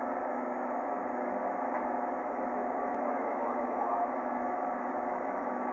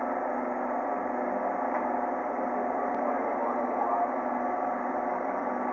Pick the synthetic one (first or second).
first